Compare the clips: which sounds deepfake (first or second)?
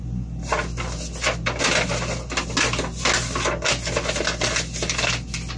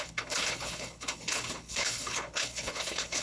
second